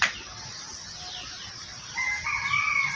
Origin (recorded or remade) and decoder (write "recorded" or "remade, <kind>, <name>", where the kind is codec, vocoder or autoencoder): recorded